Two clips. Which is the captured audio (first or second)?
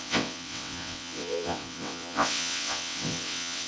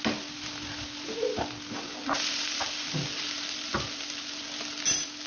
second